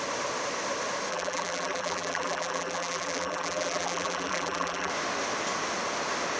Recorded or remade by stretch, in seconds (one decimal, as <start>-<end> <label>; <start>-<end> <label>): 0.0-1.1 recorded; 1.1-4.9 remade; 4.9-6.4 recorded